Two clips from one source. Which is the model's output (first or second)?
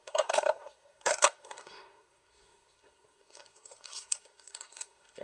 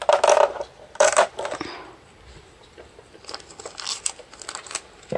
first